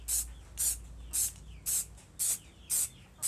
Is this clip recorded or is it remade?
recorded